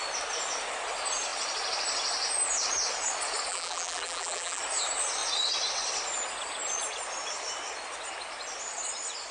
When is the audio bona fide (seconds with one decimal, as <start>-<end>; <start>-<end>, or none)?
0.0-3.5; 4.6-9.3

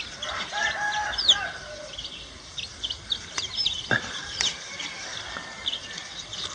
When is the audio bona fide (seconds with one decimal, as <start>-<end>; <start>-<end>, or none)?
0.6-1.6

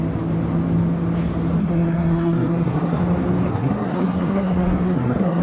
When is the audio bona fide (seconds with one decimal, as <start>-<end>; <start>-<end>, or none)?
0.0-1.6; 3.0-3.5

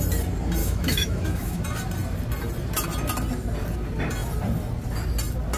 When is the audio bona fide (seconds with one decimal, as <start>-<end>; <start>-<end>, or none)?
0.0-0.6; 1.6-5.6

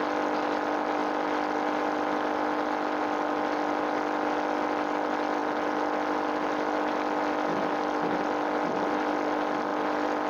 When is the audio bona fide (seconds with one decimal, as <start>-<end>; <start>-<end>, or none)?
0.0-10.3

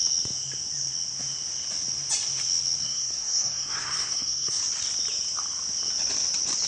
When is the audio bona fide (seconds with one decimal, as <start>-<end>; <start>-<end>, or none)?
0.0-2.8; 4.6-6.7

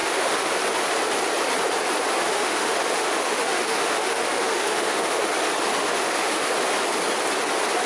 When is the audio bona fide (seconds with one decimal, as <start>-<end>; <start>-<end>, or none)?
0.5-2.3; 5.3-5.8; 6.5-7.9

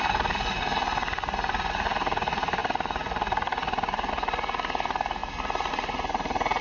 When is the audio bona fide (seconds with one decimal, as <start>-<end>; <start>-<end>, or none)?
0.0-6.6